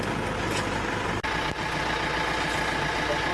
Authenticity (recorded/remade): recorded